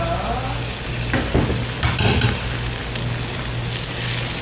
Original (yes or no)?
yes